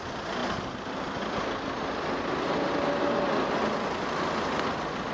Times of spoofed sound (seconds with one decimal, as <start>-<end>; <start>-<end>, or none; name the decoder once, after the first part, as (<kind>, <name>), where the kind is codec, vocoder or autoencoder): none